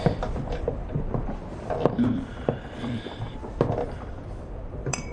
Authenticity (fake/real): fake